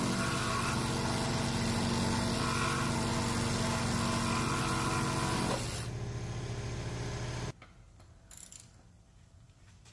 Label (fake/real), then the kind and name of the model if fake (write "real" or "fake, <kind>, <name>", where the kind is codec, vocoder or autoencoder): real